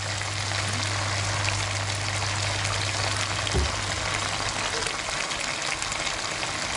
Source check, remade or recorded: recorded